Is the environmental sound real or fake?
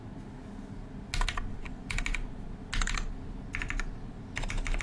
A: real